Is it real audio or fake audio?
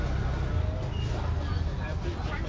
real